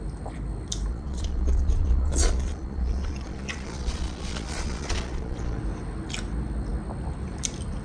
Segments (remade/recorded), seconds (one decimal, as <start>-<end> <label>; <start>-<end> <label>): 0.0-0.9 recorded; 0.9-5.6 remade; 5.6-7.8 recorded